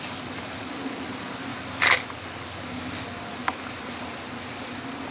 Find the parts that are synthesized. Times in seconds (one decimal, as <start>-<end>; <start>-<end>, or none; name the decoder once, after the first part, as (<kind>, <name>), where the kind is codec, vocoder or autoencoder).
none